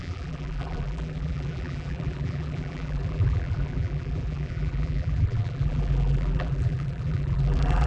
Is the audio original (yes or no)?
no